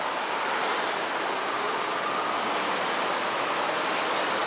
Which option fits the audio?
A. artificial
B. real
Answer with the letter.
B